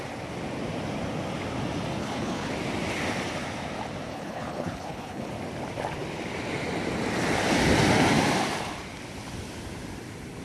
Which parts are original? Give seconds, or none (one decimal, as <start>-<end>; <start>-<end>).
0.0-2.0; 2.5-4.1; 5.3-10.4